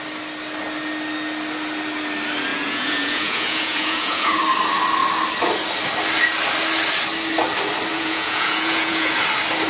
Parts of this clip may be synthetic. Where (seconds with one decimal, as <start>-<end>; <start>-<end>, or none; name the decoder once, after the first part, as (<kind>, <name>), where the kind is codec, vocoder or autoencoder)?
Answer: 2.5-4.4 (vocoder, Vocos); 7.9-9.1